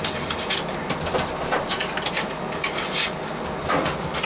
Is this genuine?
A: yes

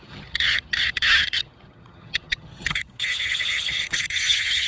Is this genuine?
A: no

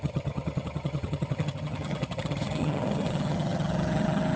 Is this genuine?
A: no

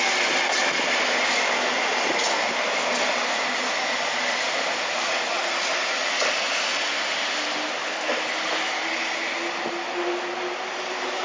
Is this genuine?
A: yes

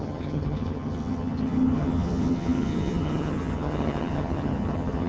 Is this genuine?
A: no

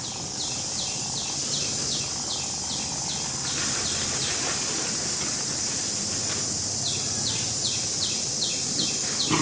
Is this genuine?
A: yes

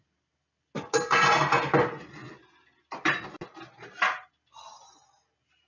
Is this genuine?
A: yes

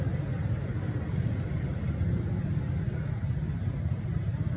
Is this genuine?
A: yes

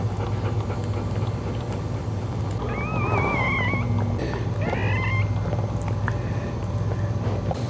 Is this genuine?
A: yes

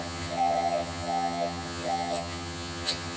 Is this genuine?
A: no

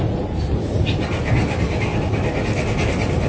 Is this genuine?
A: yes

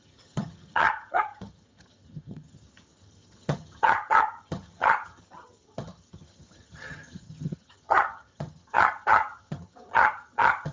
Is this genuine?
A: no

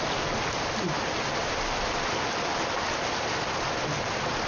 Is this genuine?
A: yes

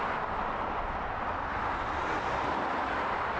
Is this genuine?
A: yes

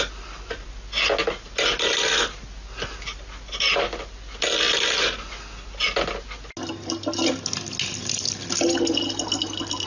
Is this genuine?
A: yes